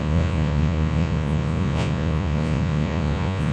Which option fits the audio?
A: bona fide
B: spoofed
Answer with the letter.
B